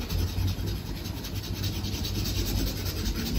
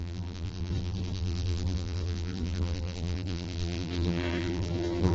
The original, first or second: first